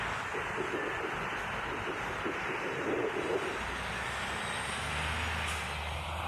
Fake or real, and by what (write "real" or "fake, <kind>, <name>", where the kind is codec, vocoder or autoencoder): real